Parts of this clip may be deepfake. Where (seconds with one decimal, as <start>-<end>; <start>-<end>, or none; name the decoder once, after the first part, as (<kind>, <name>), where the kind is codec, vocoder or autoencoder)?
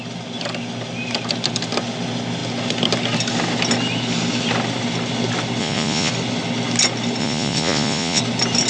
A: 5.6-6.1 (vocoder, Vocos); 7.2-8.2